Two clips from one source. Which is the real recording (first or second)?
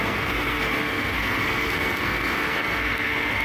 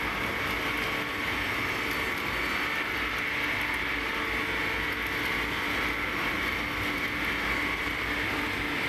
second